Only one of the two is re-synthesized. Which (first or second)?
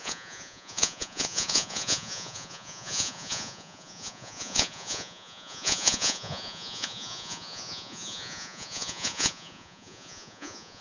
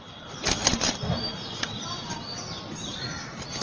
first